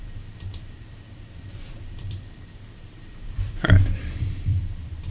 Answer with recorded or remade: remade